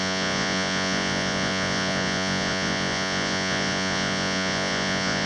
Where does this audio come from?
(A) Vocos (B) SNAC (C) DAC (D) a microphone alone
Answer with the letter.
A